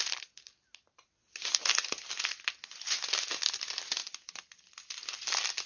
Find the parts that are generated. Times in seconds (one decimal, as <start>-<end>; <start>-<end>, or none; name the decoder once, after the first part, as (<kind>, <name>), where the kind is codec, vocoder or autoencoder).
none